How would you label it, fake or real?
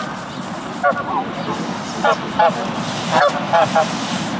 real